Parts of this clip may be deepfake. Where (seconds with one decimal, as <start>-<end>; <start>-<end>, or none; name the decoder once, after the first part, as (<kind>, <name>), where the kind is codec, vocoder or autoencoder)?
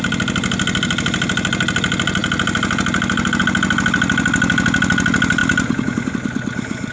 none